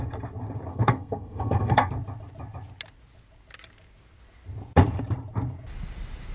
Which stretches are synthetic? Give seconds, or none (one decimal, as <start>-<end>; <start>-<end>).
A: 0.7-1.9